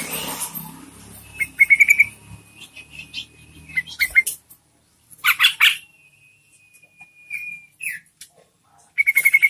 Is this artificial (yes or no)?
no